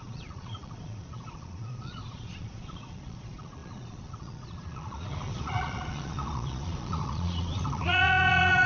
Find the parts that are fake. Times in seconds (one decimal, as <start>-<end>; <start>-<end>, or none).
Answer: 0.0-8.7